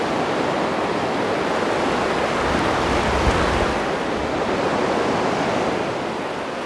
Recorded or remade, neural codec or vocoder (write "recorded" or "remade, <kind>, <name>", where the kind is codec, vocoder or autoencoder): recorded